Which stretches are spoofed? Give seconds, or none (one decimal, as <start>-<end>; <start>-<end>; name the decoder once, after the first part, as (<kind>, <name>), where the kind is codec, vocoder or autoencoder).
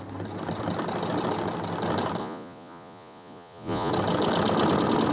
2.2-3.9 (vocoder, Vocos)